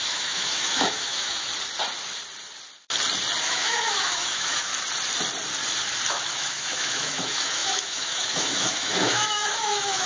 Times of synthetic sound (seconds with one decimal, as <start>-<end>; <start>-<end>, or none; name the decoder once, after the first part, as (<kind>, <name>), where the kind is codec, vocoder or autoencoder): 0.0-1.5 (autoencoder, DAC-VAE); 3.4-4.7; 6.1-10.1

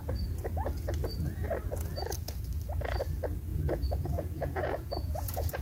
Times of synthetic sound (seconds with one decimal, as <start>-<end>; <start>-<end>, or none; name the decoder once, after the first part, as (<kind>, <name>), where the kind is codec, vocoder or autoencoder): 3.5-5.6 (vocoder, Vocos)